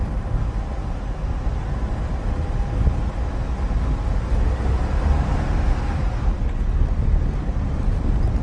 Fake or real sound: real